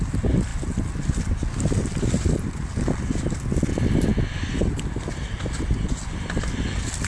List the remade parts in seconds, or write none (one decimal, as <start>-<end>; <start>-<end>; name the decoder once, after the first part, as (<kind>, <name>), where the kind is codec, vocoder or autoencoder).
none